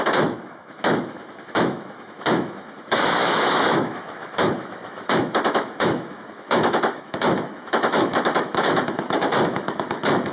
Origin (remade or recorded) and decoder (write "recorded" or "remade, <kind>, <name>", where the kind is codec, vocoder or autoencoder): remade, autoencoder, DAC-VAE